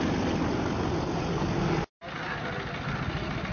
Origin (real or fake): real